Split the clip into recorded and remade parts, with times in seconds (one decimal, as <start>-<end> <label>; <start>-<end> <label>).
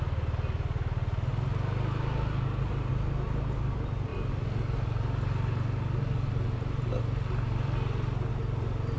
0.0-9.0 recorded